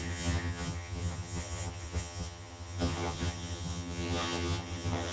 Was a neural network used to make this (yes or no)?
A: yes